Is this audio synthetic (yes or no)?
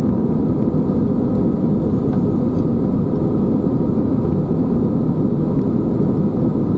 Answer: no